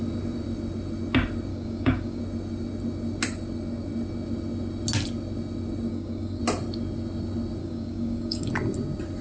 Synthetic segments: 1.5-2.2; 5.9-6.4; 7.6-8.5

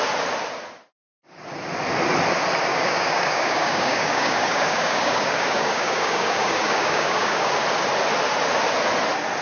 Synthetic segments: 2.7-7.5

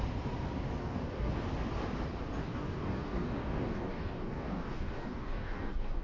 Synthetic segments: 0.8-1.3; 2.4-6.0

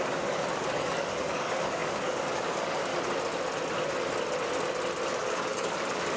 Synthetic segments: 0.0-2.9; 5.1-6.2

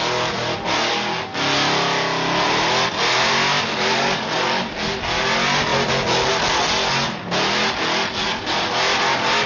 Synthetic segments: 3.7-4.6

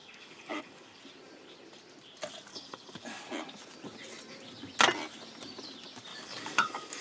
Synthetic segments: 0.0-1.0; 2.5-3.2; 6.1-7.0